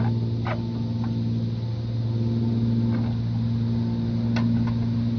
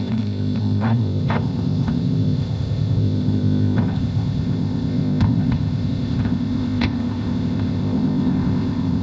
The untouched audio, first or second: first